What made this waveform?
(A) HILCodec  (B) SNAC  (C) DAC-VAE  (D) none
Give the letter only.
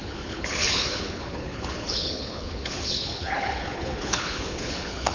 A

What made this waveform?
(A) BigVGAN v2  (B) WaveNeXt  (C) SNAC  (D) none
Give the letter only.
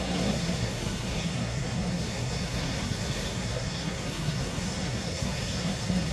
C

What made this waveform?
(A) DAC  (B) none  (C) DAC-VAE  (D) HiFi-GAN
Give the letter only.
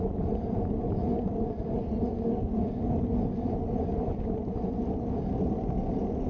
B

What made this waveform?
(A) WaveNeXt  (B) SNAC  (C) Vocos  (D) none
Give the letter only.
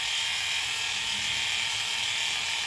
D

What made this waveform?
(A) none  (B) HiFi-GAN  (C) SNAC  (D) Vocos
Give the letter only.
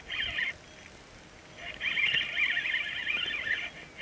A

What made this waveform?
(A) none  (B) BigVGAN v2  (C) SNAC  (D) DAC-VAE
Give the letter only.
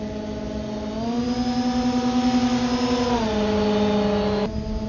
A